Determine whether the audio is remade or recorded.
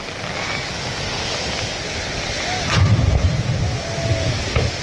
recorded